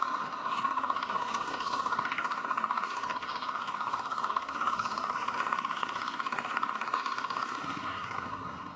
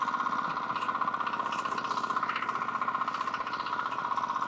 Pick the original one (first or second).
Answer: second